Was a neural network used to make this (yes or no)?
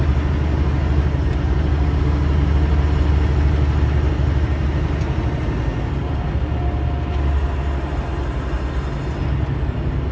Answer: no